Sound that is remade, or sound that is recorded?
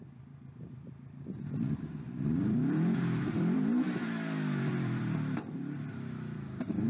remade